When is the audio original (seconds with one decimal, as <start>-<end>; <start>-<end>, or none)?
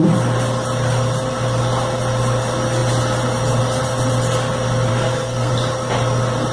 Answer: 0.0-4.9; 5.5-6.5